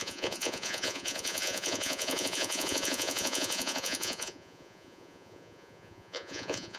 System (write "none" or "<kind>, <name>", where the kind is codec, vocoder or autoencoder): vocoder, Vocos